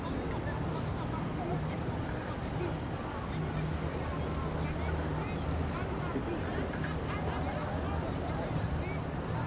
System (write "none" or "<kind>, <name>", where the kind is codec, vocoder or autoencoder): none